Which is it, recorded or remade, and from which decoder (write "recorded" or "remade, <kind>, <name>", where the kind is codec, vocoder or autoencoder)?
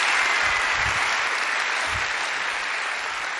recorded